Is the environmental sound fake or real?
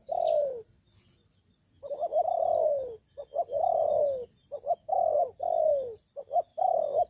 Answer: real